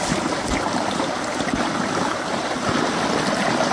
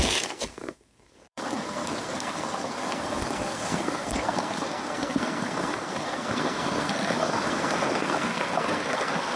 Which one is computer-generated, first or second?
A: second